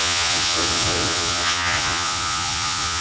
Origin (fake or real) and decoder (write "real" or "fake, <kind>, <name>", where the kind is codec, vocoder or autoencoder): fake, vocoder, Vocos